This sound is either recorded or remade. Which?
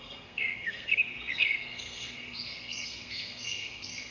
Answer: remade